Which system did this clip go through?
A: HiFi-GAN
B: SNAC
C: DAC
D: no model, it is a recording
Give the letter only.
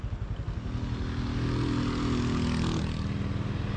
D